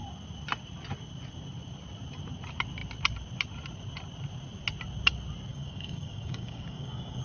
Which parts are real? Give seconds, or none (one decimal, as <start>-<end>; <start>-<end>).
0.0-5.5